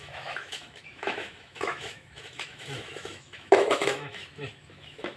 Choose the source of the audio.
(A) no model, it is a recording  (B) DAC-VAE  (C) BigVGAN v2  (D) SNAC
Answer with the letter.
B